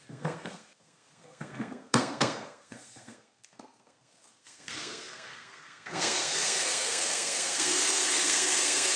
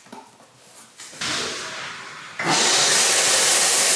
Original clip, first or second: second